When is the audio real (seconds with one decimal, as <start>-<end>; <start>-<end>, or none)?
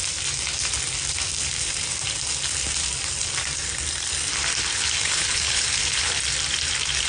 0.0-4.7; 6.1-7.1